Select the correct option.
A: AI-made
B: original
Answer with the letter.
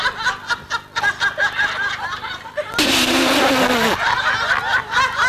B